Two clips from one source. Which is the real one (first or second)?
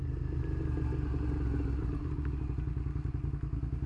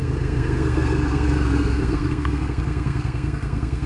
first